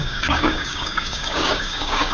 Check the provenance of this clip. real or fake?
fake